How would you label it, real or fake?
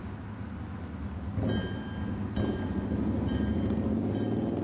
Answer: real